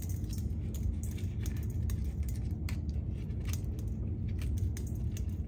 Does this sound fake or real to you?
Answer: real